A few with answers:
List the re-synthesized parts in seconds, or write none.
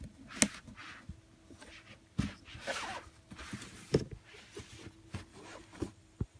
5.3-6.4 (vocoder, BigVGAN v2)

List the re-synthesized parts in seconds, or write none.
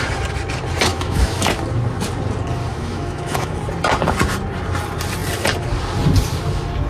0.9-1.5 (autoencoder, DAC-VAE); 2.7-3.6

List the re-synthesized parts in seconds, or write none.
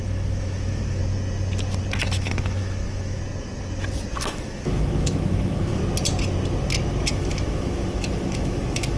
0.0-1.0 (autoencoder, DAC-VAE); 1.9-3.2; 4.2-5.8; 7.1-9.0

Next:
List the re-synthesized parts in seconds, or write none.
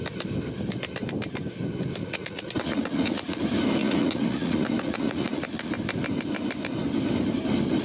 2.0-3.4 (vocoder, Vocos); 3.8-5.7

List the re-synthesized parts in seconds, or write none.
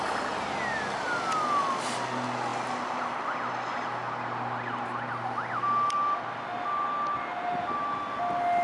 none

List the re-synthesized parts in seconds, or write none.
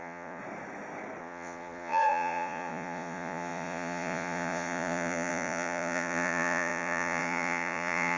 0.0-0.4 (vocoder, Vocos); 1.2-8.2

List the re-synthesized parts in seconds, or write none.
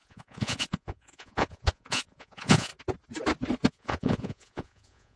0.0-2.7 (vocoder, Vocos); 3.7-5.2